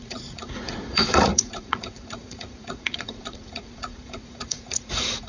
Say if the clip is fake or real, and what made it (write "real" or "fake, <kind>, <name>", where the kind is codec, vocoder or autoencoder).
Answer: fake, vocoder, Vocos